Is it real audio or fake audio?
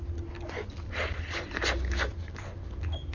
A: real